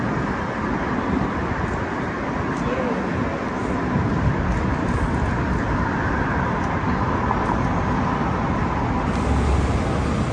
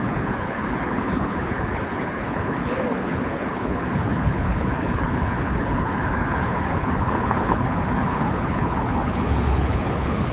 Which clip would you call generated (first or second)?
second